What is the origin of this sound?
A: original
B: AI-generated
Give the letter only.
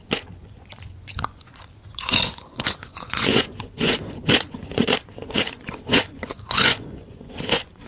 B